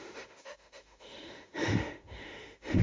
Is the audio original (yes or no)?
no